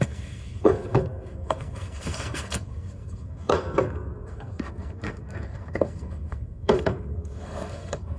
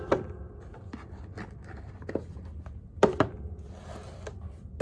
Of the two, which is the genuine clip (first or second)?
second